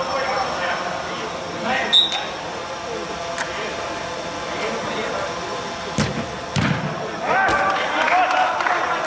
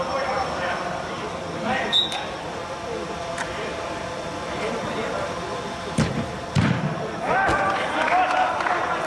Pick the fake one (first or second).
second